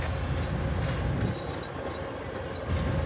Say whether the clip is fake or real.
real